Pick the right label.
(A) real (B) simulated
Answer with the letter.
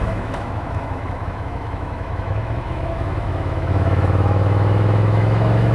B